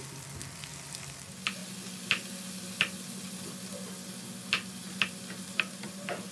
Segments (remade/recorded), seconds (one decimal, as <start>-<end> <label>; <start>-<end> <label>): 0.0-6.3 recorded